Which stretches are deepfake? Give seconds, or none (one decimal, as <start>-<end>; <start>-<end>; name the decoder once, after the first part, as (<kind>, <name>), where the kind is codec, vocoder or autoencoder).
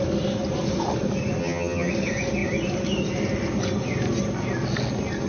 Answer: 1.4-1.9 (vocoder, HiFi-GAN)